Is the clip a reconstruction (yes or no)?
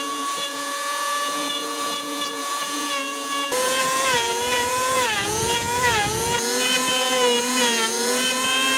yes